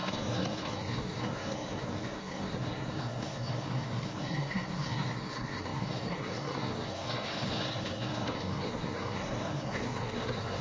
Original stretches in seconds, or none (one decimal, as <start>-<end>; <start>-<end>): none